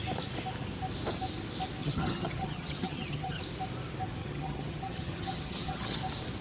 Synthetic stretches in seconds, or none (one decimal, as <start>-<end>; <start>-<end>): 1.8-3.4; 4.2-6.0